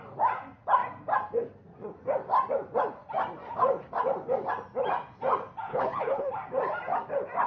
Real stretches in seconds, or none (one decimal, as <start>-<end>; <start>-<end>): 0.0-5.7; 6.3-7.5